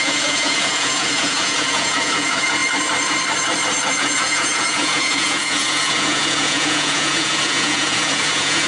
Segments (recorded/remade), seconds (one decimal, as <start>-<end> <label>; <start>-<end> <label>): 0.0-2.6 remade; 2.6-3.9 recorded; 3.9-8.7 remade